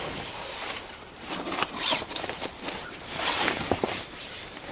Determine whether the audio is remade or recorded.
remade